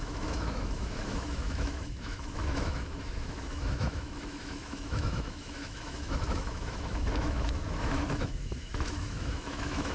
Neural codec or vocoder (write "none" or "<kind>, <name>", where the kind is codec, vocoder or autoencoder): autoencoder, DAC-VAE